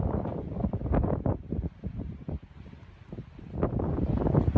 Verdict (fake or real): real